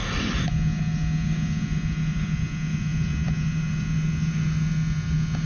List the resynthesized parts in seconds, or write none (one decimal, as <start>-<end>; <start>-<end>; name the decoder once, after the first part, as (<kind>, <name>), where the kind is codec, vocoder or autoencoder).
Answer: none